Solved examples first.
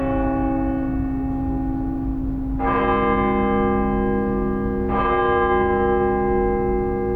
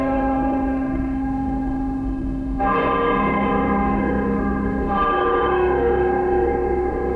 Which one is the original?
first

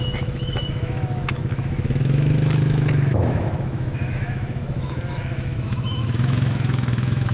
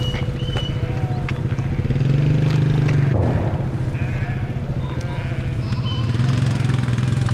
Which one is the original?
second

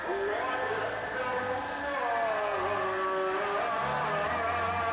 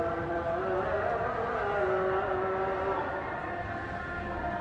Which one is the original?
first